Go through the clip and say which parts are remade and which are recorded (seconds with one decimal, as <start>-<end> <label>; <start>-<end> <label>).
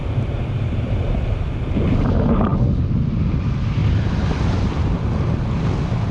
0.0-0.9 remade; 0.9-3.8 recorded; 3.8-4.7 remade; 4.7-6.1 recorded